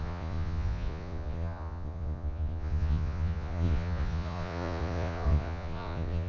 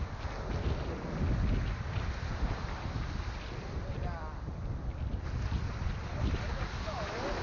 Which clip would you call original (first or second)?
second